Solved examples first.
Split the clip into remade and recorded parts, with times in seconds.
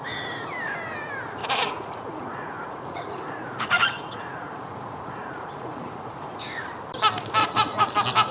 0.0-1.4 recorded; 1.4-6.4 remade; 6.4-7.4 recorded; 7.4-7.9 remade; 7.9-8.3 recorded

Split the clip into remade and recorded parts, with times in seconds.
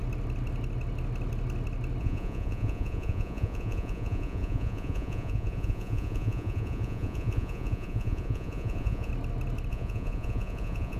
0.0-2.0 recorded; 2.0-9.1 remade; 9.1-9.7 recorded; 9.7-11.0 remade